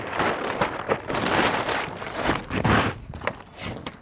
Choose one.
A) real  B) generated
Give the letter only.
A